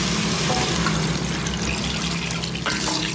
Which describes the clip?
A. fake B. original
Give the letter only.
B